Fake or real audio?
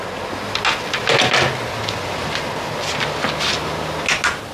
real